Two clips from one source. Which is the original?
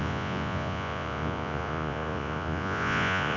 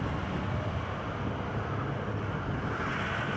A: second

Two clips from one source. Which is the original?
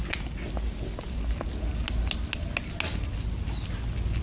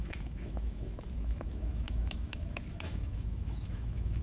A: first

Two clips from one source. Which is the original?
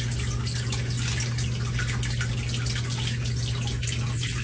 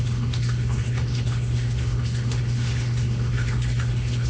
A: first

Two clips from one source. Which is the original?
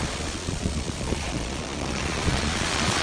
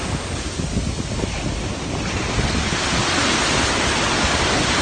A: second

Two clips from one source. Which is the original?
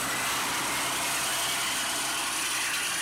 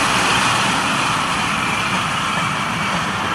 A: first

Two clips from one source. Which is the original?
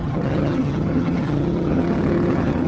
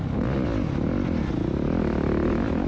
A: second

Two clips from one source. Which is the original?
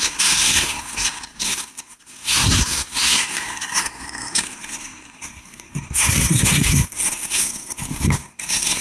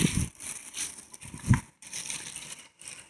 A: second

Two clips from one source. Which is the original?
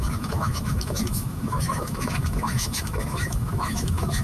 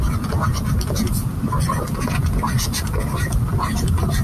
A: second